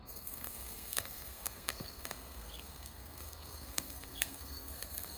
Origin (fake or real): fake